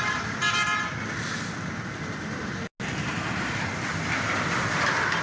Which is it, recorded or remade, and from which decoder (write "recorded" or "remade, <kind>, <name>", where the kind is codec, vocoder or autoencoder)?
recorded